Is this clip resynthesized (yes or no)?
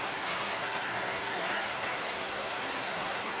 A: yes